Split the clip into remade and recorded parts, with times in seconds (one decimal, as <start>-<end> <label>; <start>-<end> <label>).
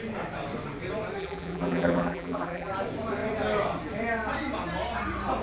0.0-1.2 recorded; 1.2-2.7 remade; 2.7-5.4 recorded